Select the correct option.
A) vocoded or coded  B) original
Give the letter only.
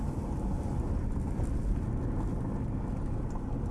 B